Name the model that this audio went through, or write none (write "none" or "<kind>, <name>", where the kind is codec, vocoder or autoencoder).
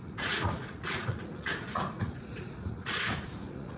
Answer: vocoder, Vocos